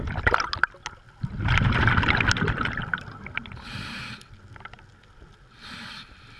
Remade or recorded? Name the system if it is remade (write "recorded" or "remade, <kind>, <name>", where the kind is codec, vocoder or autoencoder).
recorded